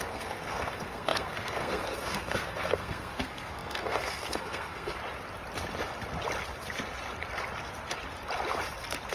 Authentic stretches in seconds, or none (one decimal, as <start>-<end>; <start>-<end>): 5.0-9.1